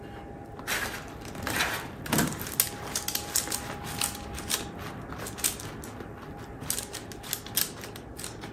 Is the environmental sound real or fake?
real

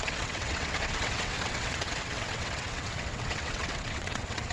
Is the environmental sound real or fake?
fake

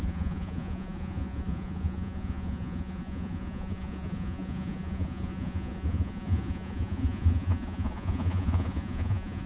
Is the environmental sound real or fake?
fake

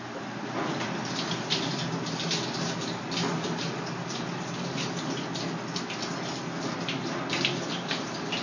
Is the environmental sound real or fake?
real